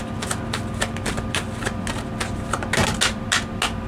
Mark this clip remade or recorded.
recorded